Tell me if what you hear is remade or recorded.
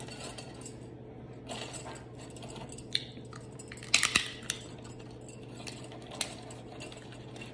recorded